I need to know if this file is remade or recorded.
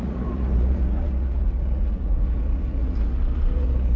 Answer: remade